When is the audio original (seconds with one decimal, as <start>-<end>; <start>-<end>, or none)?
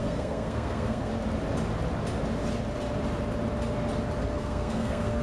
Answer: 1.1-4.2